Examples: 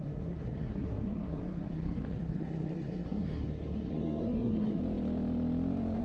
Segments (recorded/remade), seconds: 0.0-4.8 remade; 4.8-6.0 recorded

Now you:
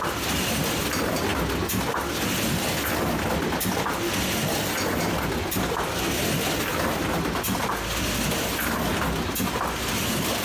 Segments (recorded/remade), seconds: 0.0-10.4 recorded

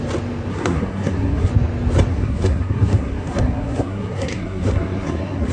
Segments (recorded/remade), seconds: 0.0-0.5 recorded; 0.5-1.5 remade; 1.5-2.1 recorded; 2.1-5.5 remade

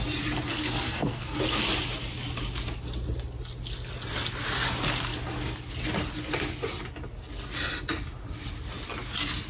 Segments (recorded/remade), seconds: 0.0-0.5 recorded; 0.5-1.4 remade; 1.4-9.5 recorded